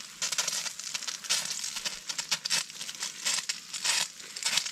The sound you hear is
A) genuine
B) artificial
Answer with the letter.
A